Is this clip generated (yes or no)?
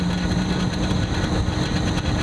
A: no